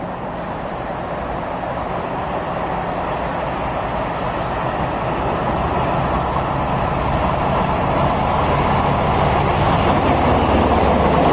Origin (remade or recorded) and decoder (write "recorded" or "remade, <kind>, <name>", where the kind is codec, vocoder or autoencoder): recorded